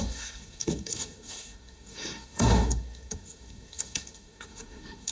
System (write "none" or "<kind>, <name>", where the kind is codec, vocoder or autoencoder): codec, SNAC